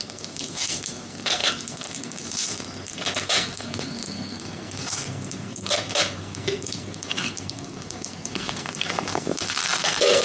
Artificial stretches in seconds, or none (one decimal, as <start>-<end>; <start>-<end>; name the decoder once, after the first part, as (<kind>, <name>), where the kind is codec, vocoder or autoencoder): 0.0-10.2 (codec, SNAC)

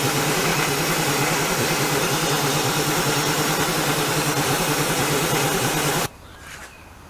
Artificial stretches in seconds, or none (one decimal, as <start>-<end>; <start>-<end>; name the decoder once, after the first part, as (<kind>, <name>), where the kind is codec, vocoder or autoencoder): none

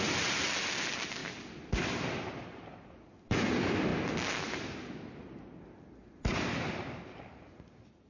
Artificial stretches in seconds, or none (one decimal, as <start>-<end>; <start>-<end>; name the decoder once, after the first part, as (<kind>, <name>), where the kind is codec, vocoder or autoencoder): none

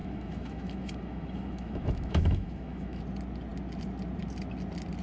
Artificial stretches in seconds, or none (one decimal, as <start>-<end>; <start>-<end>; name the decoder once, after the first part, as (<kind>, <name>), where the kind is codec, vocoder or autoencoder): 0.0-3.0 (autoencoder, DAC-VAE)

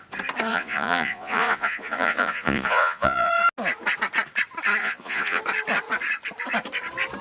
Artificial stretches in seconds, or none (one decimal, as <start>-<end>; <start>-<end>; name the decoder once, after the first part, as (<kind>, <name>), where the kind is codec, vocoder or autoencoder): 0.5-3.3 (vocoder, Vocos); 4.8-5.4

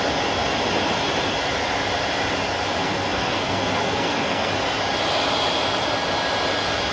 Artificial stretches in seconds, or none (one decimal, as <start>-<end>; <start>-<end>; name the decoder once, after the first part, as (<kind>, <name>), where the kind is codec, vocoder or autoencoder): 2.8-4.5 (codec, SNAC)

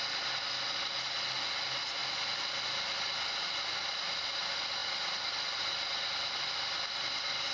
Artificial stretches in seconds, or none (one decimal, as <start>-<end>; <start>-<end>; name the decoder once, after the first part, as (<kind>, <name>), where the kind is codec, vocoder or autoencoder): none

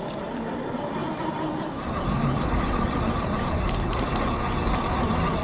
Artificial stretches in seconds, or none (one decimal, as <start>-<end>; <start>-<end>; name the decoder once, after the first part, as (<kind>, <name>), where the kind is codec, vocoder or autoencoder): 1.0-4.2 (vocoder, BigVGAN v2)